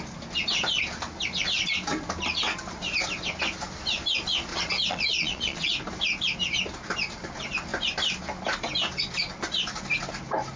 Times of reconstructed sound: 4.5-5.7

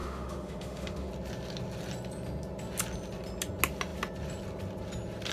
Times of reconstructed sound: 0.0-1.1